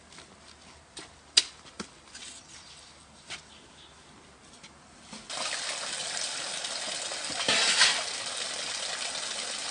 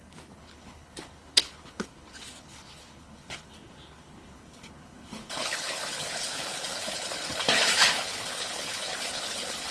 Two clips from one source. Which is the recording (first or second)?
first